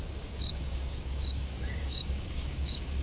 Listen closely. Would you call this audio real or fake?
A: fake